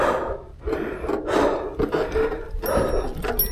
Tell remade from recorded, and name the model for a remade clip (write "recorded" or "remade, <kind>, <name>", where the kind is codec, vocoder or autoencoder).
recorded